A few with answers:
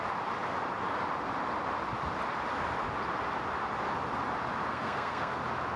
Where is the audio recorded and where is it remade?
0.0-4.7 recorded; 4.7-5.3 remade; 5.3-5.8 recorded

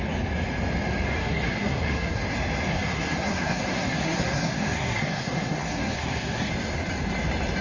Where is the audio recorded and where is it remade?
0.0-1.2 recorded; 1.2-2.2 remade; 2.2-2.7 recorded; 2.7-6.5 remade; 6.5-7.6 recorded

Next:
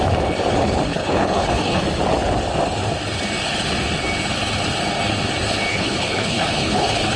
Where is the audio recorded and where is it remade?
0.0-0.9 recorded; 0.9-1.8 remade; 1.8-5.7 recorded; 5.7-7.2 remade

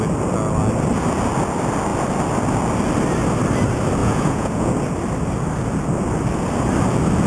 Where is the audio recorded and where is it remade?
0.0-4.0 recorded; 4.0-4.7 remade; 4.7-7.3 recorded

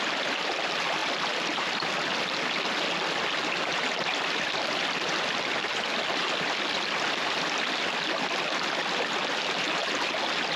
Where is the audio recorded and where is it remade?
0.0-10.6 recorded